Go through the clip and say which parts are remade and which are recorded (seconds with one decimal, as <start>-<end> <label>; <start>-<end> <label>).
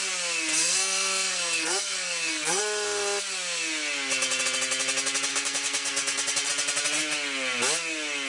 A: 0.0-0.6 recorded; 0.6-2.6 remade; 2.6-5.3 recorded; 5.3-6.5 remade; 6.5-8.3 recorded